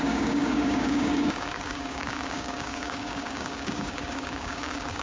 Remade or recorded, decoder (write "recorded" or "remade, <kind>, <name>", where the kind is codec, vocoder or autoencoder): remade, codec, DAC